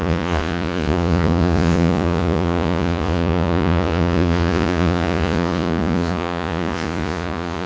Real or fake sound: fake